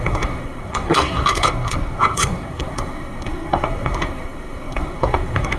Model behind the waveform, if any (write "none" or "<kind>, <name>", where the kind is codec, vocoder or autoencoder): codec, SNAC